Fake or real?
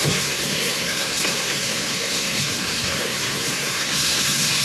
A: fake